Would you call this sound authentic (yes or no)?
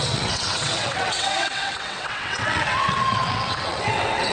no